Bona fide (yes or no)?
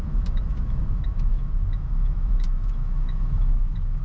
no